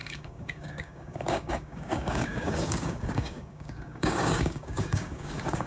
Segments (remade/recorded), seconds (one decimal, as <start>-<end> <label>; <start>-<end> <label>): 0.0-5.7 remade